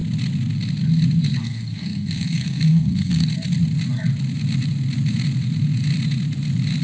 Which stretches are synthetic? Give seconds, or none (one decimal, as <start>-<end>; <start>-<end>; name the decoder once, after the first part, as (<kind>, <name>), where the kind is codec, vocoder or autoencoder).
1.4-3.3 (codec, SNAC)